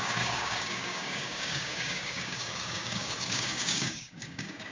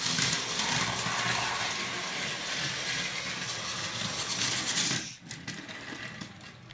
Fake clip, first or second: first